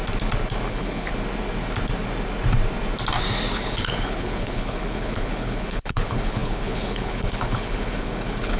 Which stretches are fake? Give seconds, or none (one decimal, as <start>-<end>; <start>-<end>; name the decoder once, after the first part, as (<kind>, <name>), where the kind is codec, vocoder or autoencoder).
0.7-1.1 (codec, HILCodec); 3.5-8.6